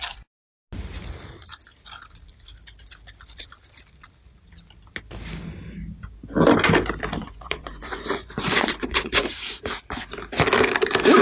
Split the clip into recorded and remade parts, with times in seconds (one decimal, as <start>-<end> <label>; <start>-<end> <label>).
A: 0.0-7.2 recorded; 7.2-9.2 remade; 9.2-11.2 recorded

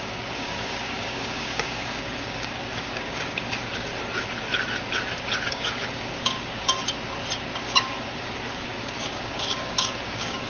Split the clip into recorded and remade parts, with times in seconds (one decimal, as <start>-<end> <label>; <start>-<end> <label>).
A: 0.0-3.9 remade; 3.9-5.4 recorded; 5.4-6.8 remade; 6.8-7.6 recorded; 7.6-10.5 remade

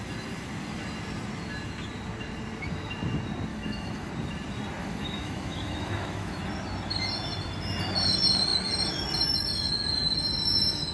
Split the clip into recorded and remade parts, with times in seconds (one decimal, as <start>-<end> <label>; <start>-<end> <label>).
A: 0.0-3.5 recorded; 3.5-4.1 remade; 4.1-4.8 recorded; 4.8-6.4 remade; 6.4-10.9 recorded